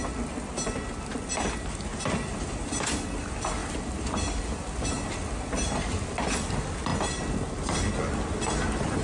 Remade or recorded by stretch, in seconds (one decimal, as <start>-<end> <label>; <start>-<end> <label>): 0.0-3.6 recorded; 3.6-4.4 remade; 4.4-9.0 recorded